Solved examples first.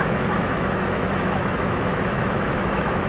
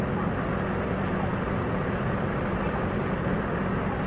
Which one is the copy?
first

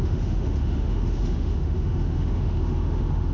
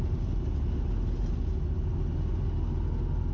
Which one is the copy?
first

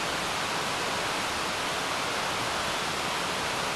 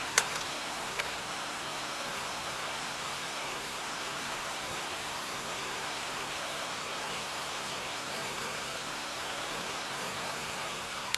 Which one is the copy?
second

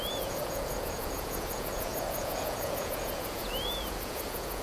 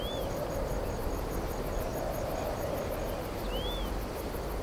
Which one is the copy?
first